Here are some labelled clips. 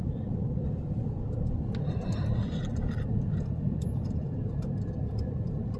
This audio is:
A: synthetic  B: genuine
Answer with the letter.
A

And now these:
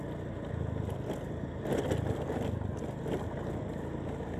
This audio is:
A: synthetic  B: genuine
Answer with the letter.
B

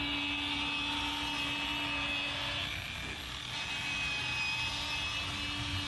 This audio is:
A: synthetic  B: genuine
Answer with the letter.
B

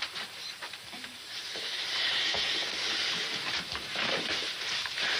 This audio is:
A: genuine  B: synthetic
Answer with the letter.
B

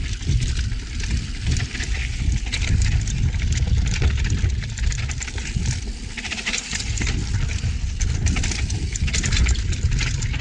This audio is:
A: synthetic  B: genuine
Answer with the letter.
B